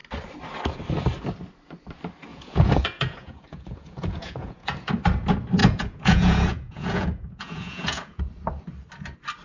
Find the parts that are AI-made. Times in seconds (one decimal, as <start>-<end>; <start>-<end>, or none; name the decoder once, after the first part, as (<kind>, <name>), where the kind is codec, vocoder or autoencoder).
2.3-4.9 (vocoder, Vocos); 5.6-8.2